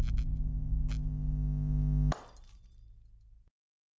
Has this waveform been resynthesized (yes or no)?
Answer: no